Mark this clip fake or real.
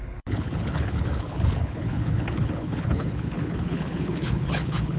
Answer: fake